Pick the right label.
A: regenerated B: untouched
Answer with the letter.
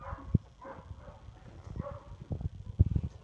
B